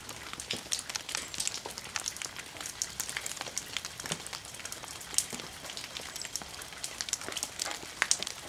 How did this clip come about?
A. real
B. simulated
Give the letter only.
A